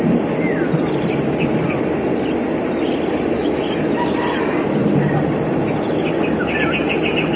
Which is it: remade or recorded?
recorded